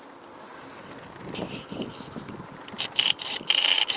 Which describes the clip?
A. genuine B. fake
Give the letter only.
B